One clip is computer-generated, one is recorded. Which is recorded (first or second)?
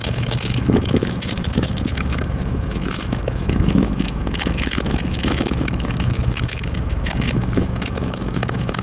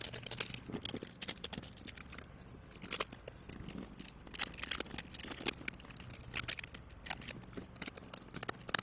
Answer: second